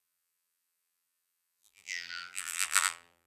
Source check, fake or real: fake